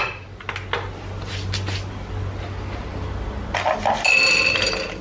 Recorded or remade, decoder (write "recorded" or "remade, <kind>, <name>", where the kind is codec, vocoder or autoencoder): recorded